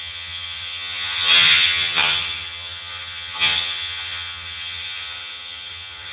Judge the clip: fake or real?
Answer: fake